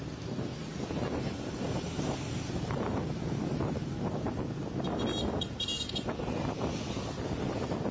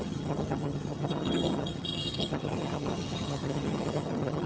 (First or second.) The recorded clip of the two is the first